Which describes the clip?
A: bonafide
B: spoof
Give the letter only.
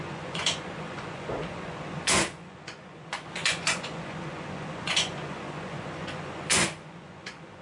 B